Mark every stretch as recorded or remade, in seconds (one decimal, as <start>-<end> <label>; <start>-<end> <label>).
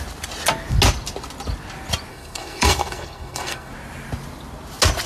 0.0-2.1 recorded; 2.1-3.7 remade; 3.7-5.1 recorded